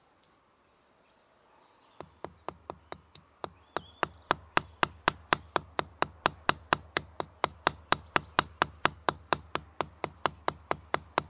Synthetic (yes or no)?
no